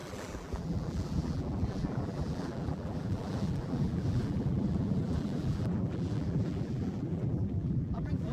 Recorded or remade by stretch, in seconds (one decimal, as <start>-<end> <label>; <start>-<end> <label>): 0.0-8.3 remade